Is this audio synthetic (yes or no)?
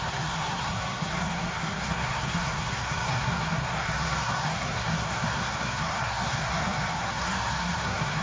yes